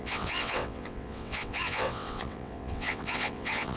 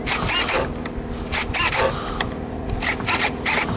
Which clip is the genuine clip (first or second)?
second